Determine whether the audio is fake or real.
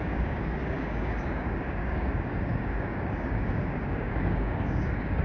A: fake